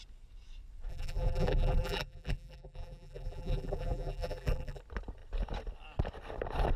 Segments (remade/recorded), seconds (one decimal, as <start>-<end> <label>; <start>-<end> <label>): 0.0-0.9 recorded; 0.9-4.8 remade; 4.8-6.8 recorded